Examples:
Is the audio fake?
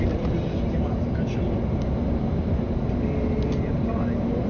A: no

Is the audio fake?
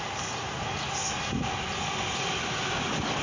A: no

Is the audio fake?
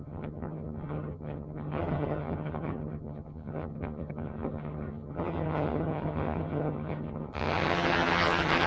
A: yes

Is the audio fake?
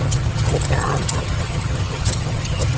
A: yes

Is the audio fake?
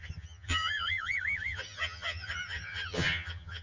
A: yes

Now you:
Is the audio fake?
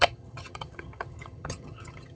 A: yes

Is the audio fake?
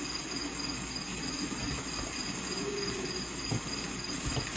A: no